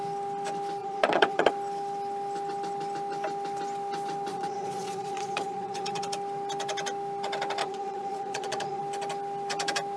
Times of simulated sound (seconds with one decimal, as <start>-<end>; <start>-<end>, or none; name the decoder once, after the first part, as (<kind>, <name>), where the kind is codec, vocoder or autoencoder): 0.8-1.5 (vocoder, Vocos); 4.3-6.0; 7.6-8.8